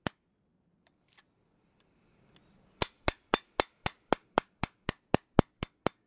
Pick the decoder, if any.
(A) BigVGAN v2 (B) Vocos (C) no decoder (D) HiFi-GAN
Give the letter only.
C